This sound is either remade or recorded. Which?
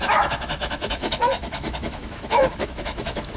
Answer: remade